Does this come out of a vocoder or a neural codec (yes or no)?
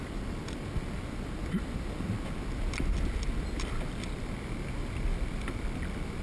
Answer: no